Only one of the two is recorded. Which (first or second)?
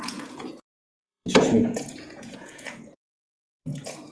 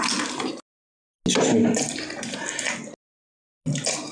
second